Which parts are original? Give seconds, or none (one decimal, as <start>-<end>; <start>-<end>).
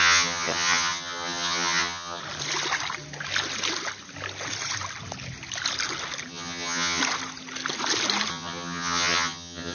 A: 2.2-6.3; 7.0-8.3